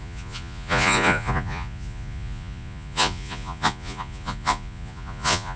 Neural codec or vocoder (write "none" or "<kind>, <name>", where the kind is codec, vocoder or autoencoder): vocoder, Vocos